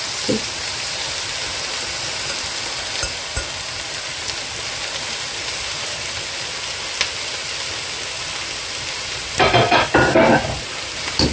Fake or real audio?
real